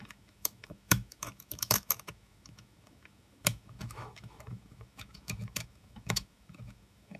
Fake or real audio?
fake